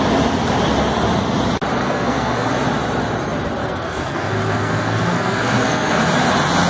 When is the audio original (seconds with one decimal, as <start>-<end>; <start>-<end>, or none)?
0.0-1.8; 2.5-3.6; 6.0-6.7